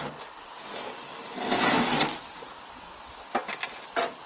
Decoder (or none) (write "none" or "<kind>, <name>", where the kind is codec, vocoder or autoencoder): none